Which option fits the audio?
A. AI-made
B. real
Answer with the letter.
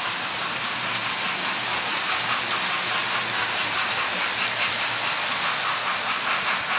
B